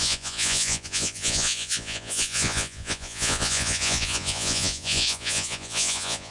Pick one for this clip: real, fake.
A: fake